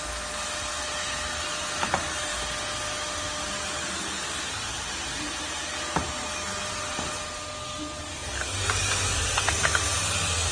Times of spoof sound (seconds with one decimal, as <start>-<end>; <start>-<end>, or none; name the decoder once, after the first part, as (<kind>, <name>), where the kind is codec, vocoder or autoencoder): none